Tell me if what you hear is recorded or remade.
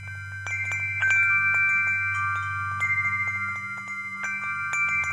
recorded